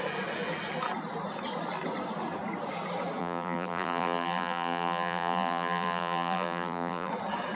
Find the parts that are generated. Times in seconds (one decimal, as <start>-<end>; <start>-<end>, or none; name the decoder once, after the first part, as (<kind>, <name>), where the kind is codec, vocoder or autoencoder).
3.2-7.1 (vocoder, BigVGAN v2)